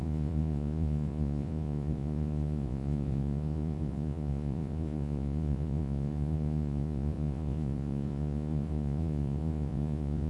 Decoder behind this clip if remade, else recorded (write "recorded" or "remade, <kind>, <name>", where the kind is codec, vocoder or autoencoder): remade, vocoder, Vocos